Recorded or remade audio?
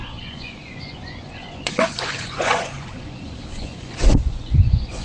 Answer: remade